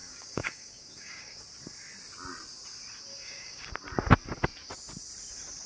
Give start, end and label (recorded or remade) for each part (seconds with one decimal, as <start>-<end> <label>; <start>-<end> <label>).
0.0-1.4 remade; 1.4-3.1 recorded; 3.1-3.7 remade; 3.7-5.7 recorded